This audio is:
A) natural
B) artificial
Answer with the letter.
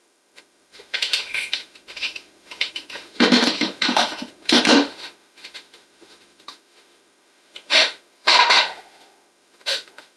B